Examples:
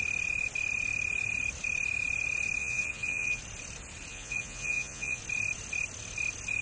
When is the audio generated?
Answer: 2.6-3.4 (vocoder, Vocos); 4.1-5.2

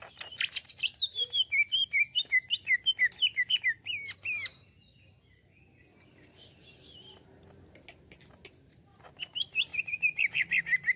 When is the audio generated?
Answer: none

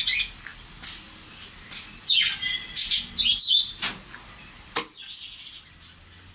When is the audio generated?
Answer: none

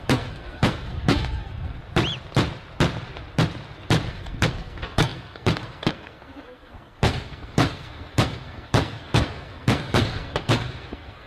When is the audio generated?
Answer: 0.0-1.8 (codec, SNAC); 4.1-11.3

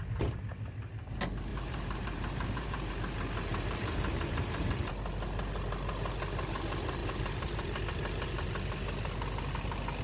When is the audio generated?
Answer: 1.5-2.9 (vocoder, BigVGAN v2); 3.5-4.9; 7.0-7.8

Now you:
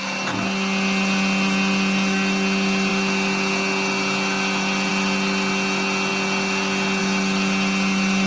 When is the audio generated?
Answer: none

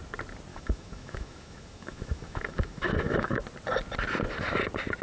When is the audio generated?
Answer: 0.5-3.4 (autoencoder, DAC-VAE)